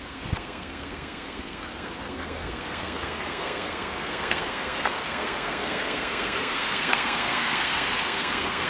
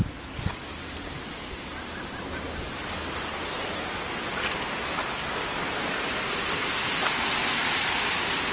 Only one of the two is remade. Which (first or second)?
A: first